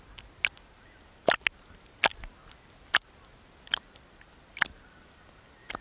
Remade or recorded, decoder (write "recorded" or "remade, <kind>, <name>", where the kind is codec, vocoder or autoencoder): recorded